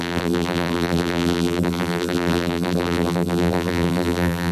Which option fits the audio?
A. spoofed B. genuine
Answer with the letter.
A